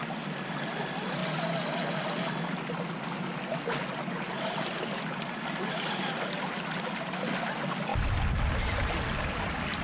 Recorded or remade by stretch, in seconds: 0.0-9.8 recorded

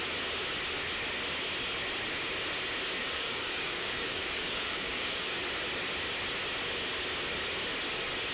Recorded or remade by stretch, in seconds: 0.0-3.0 recorded; 3.0-5.3 remade; 5.3-8.3 recorded

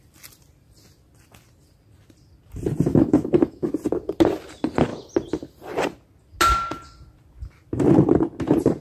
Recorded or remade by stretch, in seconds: 0.0-2.9 recorded; 2.9-3.7 remade; 3.7-8.8 recorded